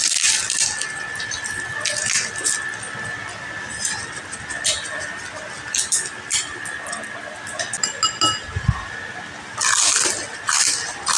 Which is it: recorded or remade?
recorded